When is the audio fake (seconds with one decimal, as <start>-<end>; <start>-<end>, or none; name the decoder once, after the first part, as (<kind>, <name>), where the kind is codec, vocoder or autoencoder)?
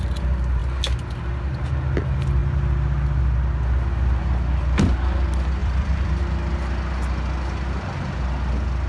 5.6-6.2 (vocoder, BigVGAN v2)